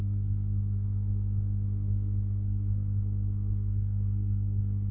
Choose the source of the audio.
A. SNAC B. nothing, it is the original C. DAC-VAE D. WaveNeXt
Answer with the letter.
A